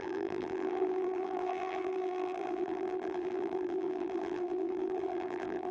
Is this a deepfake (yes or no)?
yes